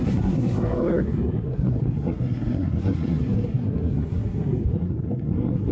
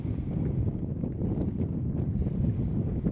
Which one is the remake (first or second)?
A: first